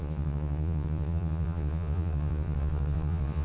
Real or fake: fake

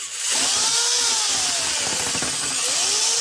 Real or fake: real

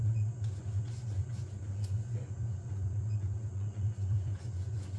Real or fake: fake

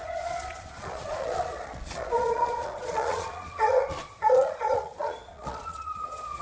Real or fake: fake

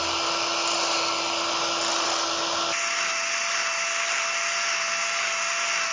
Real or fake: real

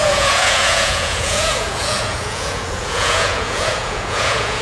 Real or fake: fake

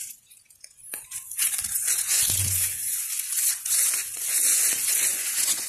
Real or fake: fake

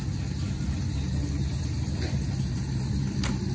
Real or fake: real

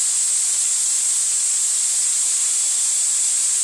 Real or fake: real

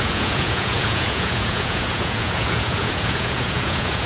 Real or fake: fake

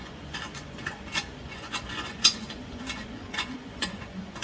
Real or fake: fake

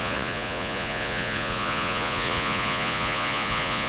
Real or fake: fake